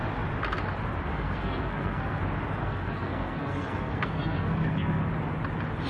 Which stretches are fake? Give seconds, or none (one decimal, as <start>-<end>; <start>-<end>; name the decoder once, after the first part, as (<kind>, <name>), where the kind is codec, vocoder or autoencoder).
1.1-2.2 (codec, SNAC); 2.6-5.1